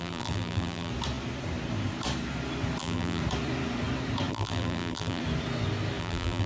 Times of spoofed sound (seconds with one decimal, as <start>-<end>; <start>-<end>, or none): 0.0-0.9; 2.8-3.2; 4.3-5.2; 6.0-6.5